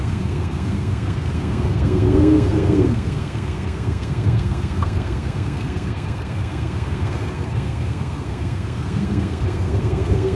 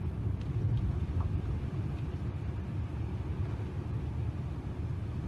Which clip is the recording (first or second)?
second